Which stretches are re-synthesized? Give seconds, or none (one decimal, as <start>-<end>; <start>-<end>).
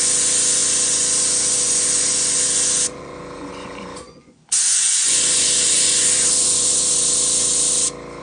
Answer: 0.0-6.9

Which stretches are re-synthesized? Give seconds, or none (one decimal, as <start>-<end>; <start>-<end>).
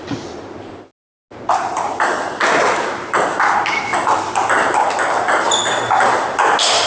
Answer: none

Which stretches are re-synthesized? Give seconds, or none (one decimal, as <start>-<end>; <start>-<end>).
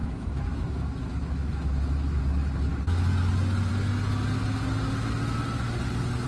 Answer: 0.0-2.2